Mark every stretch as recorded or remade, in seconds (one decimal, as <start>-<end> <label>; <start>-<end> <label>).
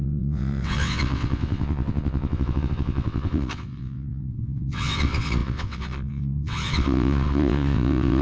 0.0-8.2 remade